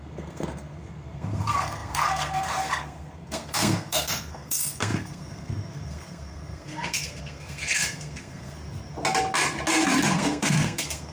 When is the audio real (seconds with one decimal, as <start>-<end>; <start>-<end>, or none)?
8.6-10.1

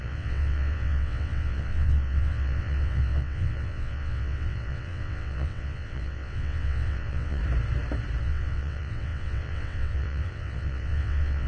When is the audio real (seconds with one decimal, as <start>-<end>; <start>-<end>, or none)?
7.4-8.2

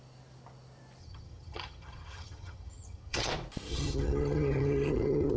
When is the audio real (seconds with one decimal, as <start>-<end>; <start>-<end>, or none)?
0.0-1.0; 3.3-3.7

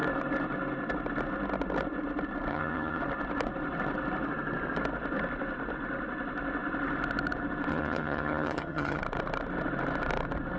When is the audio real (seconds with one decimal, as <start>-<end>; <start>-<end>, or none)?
0.0-2.5; 3.0-7.7; 9.0-10.6

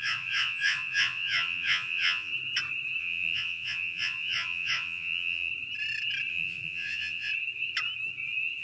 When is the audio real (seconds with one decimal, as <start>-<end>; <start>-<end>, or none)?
2.3-3.0; 5.5-6.3; 7.3-8.6

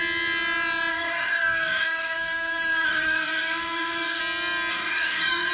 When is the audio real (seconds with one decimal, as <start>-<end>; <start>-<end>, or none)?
0.0-0.9; 4.2-4.7

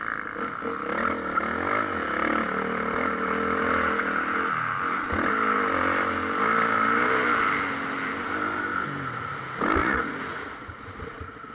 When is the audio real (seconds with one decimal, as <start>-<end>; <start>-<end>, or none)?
0.0-9.8